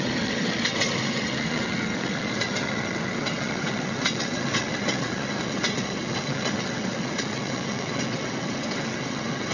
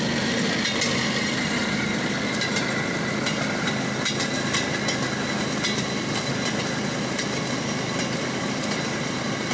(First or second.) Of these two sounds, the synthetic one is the first